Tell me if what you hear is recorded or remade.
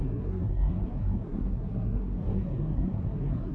remade